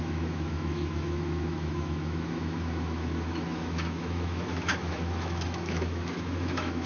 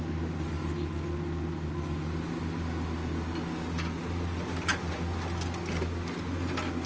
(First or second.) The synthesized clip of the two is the first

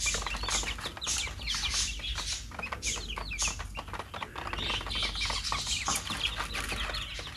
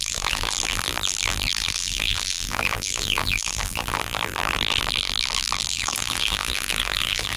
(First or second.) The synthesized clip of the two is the second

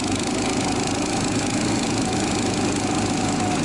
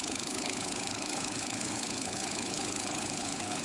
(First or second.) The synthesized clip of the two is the second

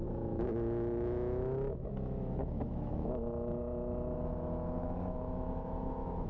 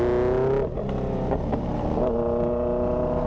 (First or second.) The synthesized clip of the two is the first